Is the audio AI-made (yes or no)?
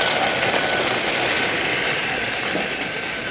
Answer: no